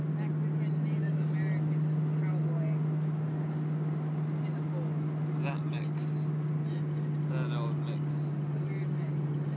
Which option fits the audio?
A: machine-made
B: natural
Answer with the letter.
B